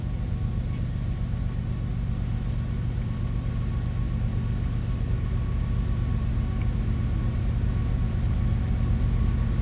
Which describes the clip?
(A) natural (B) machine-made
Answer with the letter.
A